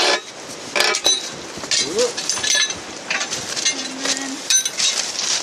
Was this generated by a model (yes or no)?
no